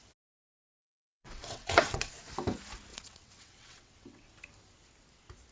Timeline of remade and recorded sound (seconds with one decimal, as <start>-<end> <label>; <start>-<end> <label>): 0.0-0.8 recorded; 0.8-2.1 remade; 2.1-2.9 recorded; 2.9-4.3 remade; 4.3-5.5 recorded